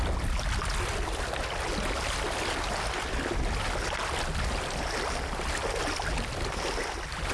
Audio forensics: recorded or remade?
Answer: recorded